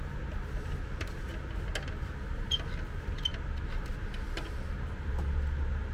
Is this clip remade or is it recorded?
recorded